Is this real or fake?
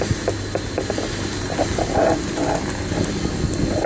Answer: real